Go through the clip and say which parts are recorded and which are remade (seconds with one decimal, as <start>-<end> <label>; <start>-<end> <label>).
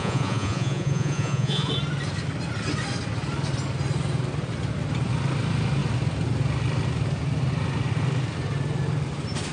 0.0-1.7 remade; 1.7-9.5 recorded